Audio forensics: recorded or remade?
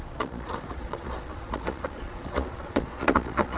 remade